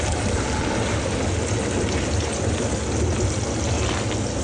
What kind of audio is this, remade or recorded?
recorded